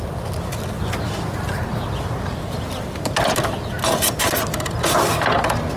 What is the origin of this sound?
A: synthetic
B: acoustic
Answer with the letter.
B